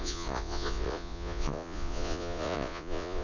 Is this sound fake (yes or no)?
yes